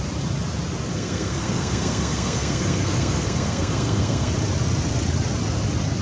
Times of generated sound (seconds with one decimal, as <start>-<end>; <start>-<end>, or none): 0.9-4.3